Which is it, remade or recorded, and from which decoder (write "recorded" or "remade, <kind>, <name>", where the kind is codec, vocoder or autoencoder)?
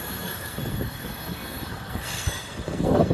remade, codec, SNAC